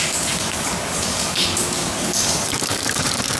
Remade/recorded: remade